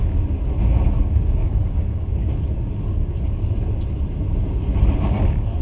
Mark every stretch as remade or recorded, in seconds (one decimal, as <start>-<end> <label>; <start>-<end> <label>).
0.0-1.0 recorded; 1.0-2.1 remade; 2.1-5.6 recorded